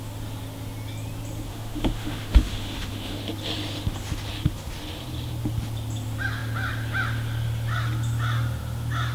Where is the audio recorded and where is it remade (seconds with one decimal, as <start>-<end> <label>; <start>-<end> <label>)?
0.0-1.5 recorded; 1.5-3.2 remade; 3.2-9.1 recorded